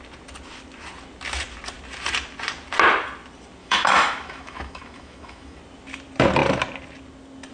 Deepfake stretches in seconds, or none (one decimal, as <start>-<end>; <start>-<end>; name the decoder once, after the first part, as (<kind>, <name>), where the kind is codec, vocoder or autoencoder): 3.6-5.6 (autoencoder, DAC-VAE)